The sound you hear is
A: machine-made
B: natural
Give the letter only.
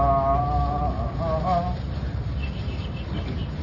B